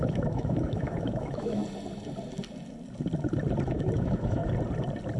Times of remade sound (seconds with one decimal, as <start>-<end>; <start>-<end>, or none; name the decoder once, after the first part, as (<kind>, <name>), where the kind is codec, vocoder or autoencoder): 0.0-1.6 (autoencoder, DAC-VAE); 3.7-4.4